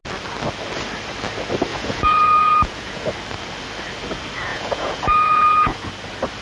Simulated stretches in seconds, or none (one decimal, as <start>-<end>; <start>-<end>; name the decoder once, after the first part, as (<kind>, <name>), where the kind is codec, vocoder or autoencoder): 1.7-3.1 (vocoder, Vocos); 4.5-5.9